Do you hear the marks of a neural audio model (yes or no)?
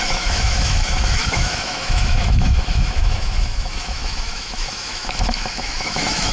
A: yes